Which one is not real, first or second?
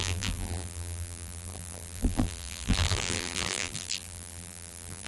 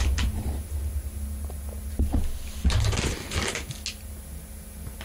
first